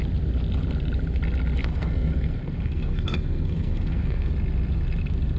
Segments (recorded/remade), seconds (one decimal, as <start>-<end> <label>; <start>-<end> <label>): 0.0-1.6 recorded; 1.6-4.3 remade; 4.3-5.4 recorded